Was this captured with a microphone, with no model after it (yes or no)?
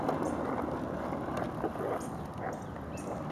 yes